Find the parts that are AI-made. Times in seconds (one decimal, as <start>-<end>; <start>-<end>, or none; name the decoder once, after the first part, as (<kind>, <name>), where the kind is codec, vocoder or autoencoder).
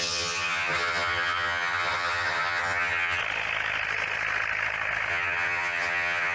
0.0-3.2 (vocoder, HiFi-GAN); 5.1-6.3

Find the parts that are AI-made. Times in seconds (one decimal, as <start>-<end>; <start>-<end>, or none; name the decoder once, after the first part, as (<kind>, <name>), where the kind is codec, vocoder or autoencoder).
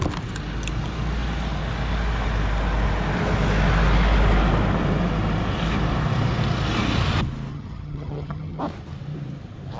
7.5-8.6 (vocoder, HiFi-GAN)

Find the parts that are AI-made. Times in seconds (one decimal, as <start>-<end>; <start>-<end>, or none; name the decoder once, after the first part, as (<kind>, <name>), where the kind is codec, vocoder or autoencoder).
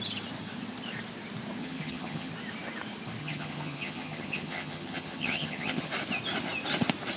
1.6-2.3 (vocoder, HiFi-GAN); 3.2-5.9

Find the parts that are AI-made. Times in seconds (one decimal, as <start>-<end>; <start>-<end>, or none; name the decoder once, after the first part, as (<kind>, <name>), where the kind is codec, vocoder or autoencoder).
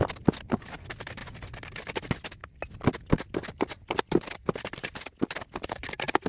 none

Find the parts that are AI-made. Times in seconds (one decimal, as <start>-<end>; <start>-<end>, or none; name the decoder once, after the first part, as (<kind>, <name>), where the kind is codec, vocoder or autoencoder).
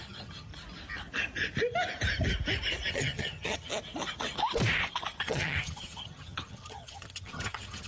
0.0-0.5 (vocoder, HiFi-GAN); 2.9-3.7; 5.2-7.9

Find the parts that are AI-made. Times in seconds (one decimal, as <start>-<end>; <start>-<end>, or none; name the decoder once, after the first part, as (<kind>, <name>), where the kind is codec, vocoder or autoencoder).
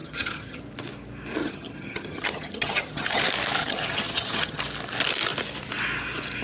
0.0-0.6 (vocoder, HiFi-GAN); 1.4-3.2; 3.6-4.6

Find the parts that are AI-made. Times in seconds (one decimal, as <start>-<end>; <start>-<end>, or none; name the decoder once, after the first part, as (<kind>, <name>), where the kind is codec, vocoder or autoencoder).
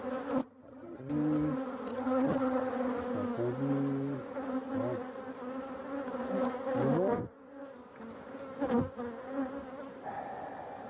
0.4-1.1 (vocoder, HiFi-GAN); 1.9-2.7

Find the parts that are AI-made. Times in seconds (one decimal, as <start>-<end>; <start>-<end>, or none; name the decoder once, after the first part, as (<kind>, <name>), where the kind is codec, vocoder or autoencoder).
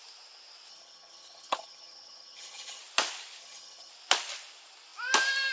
0.7-2.8 (vocoder, HiFi-GAN); 3.4-3.9